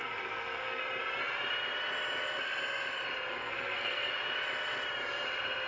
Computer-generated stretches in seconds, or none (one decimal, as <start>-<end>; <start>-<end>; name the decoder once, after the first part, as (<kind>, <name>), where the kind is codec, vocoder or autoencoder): 0.0-0.8 (codec, SNAC); 3.3-4.1